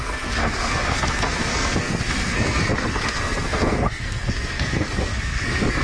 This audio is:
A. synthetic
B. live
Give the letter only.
A